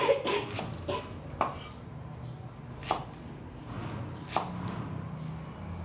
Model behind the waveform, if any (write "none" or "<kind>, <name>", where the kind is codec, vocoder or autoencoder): none